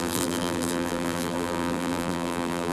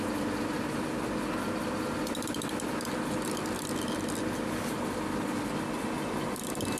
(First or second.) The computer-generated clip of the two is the first